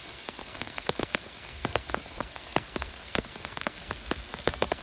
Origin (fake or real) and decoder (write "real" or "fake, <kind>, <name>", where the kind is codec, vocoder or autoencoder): fake, codec, SNAC